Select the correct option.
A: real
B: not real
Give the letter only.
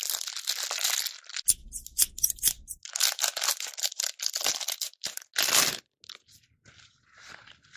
A